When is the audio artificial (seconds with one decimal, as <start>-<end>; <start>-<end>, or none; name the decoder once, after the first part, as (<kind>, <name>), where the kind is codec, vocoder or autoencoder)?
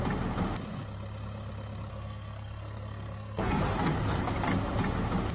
1.9-3.6 (codec, SNAC)